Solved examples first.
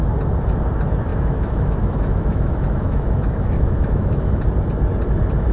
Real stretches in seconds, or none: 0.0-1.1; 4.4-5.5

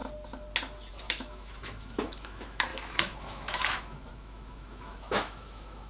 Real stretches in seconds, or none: 0.0-0.9

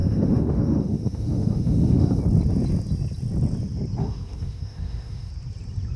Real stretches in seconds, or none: 2.2-4.0; 5.3-6.0

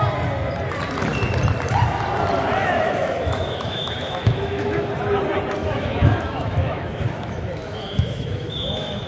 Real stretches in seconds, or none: 0.0-2.6; 4.9-5.6

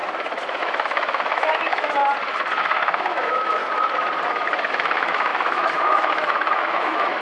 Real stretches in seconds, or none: 0.0-0.6; 2.0-2.6; 3.6-4.7